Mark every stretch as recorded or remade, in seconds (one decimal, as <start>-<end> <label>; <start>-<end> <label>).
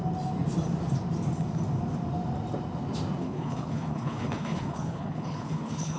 0.0-3.2 recorded; 3.2-6.0 remade